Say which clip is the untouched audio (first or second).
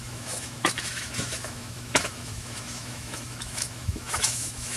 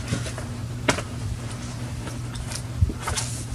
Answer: second